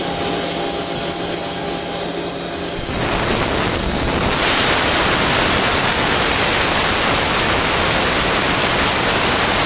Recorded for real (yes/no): yes